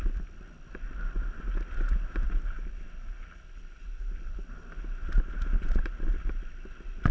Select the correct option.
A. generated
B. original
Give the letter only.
B